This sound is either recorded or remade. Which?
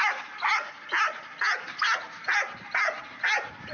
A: recorded